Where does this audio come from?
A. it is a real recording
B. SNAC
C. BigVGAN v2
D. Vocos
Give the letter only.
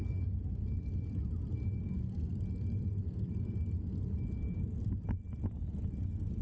A